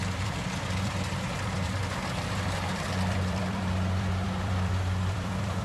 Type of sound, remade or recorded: remade